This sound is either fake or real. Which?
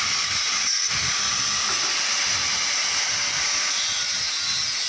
real